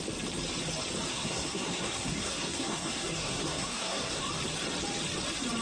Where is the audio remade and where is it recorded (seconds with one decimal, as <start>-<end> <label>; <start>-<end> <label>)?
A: 0.0-1.1 recorded; 1.1-4.2 remade; 4.2-5.6 recorded